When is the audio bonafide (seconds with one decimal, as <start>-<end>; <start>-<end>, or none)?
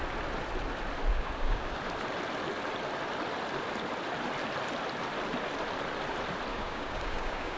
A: 0.0-1.1; 1.8-6.5